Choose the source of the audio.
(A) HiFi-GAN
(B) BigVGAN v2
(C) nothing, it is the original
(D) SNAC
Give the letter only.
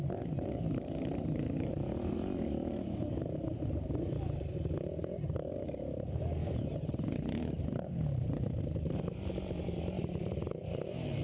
B